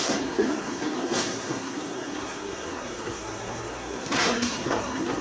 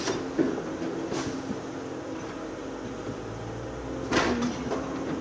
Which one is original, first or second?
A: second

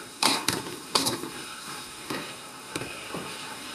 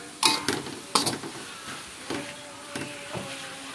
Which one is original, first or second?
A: second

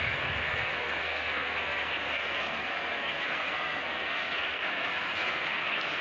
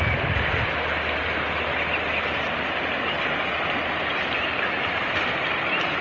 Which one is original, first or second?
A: second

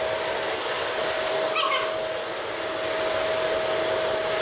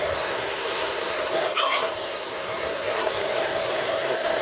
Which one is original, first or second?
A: first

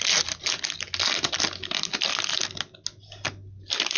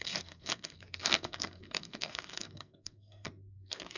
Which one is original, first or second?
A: first